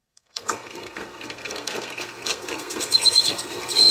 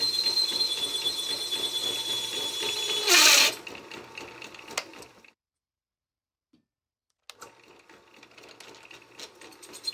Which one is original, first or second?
second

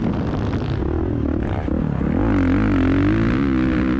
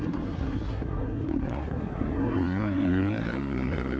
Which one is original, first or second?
first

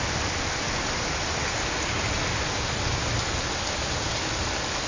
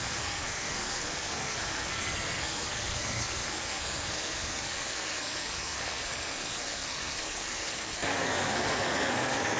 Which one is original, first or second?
first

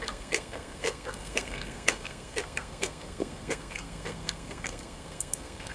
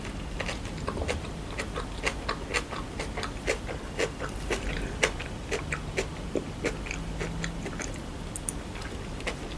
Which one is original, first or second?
second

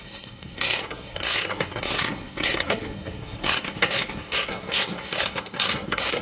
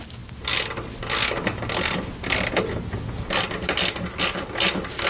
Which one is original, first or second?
second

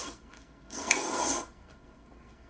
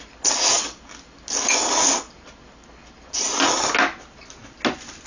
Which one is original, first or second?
second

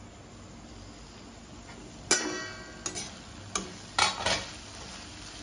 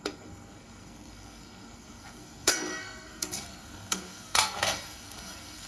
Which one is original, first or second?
first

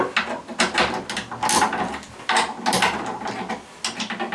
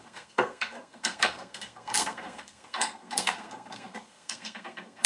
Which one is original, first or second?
first